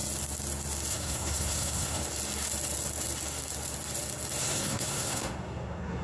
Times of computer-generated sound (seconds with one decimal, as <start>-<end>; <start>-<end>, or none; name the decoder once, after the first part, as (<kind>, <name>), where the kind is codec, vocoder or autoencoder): 0.9-2.0 (codec, SNAC); 4.4-6.0